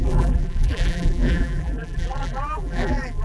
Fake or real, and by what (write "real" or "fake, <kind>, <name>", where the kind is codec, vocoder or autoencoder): fake, vocoder, BigVGAN v2